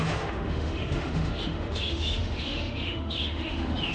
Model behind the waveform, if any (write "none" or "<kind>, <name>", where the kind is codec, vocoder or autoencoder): autoencoder, DAC-VAE